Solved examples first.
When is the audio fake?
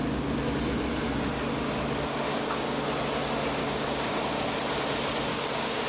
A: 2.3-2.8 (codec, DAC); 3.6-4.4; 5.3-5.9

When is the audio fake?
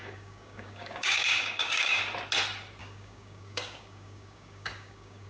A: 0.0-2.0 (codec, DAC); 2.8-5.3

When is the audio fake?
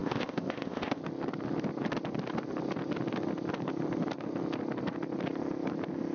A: 0.0-1.0 (codec, ZipCodec)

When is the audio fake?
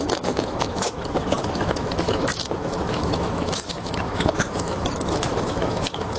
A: 0.0-6.2 (autoencoder, DAC-VAE)